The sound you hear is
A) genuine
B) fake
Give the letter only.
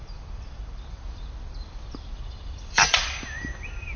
B